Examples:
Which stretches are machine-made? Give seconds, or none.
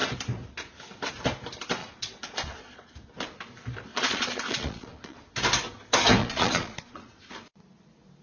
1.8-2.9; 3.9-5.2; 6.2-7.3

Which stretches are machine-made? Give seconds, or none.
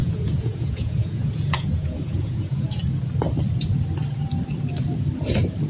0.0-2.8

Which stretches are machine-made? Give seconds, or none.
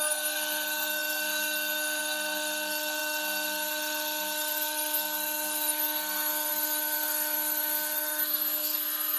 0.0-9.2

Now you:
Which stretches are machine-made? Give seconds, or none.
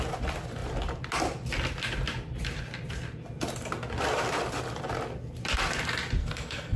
6.2-6.8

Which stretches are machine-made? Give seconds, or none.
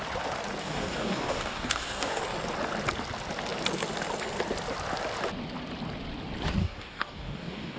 0.6-2.2; 6.6-7.8